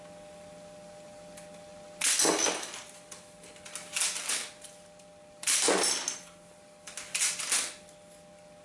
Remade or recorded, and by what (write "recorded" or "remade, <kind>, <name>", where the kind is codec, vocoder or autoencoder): recorded